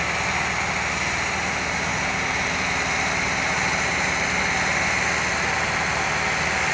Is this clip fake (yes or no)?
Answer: no